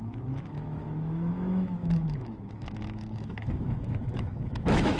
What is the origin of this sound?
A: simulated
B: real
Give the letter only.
A